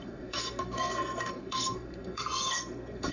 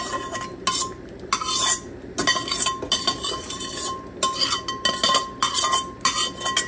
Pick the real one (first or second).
second